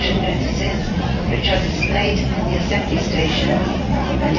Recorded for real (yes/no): no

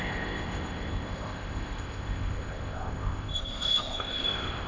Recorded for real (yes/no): no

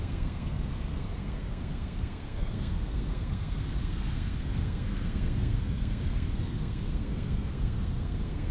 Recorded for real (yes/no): no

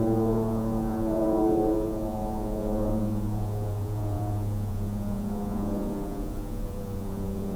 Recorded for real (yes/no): no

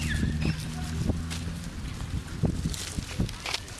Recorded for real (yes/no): yes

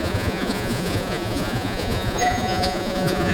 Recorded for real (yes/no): no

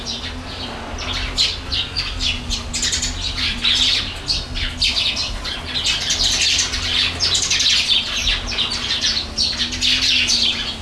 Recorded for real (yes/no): yes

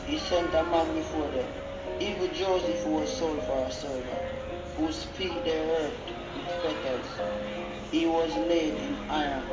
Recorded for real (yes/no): yes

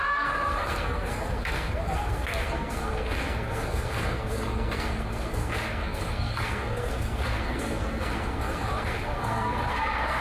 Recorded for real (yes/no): no